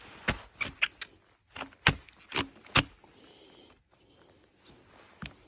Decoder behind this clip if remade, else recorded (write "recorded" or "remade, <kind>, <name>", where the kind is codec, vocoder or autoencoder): recorded